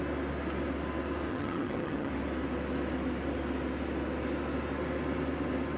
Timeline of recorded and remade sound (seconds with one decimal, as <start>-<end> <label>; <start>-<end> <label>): 0.0-1.3 recorded; 1.3-2.1 remade; 2.1-5.8 recorded